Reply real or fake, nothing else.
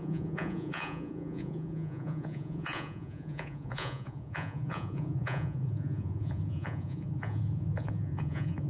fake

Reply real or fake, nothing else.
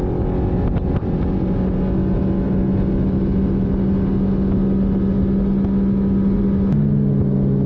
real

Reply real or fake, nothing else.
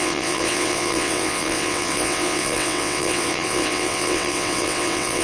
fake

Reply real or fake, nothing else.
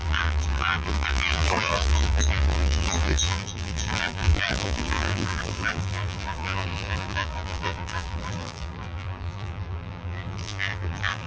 fake